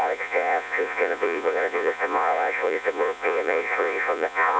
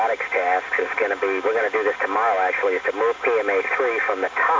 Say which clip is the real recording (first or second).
second